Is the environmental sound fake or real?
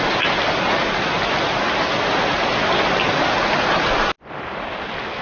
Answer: real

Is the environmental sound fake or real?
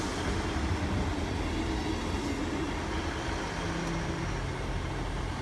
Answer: real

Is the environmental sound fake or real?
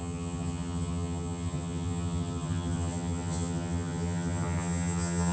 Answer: fake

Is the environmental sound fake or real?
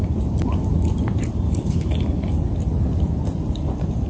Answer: real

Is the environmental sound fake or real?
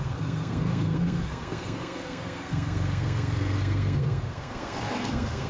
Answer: fake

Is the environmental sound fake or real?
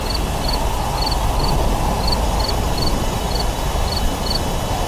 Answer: real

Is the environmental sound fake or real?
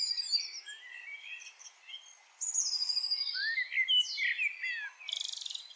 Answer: real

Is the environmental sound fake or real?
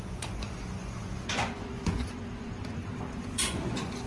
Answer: fake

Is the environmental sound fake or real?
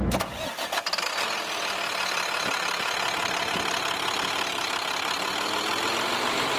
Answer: real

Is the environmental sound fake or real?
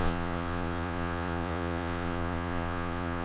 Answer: fake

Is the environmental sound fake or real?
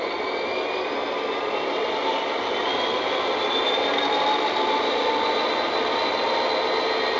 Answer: real